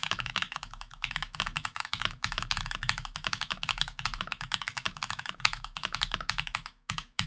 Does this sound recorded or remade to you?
remade